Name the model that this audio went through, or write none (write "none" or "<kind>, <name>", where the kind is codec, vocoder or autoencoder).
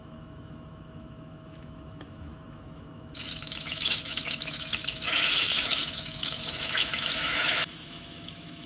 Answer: autoencoder, DAC-VAE